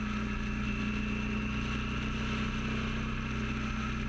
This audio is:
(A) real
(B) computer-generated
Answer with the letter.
A